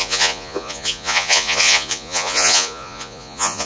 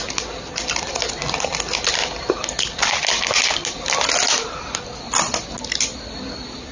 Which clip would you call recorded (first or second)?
second